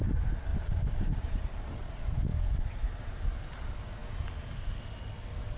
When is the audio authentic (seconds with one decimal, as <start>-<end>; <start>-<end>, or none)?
0.0-0.5; 1.9-5.6